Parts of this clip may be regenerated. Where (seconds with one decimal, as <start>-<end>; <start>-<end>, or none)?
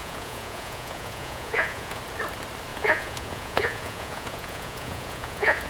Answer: 0.0-2.0; 2.7-5.7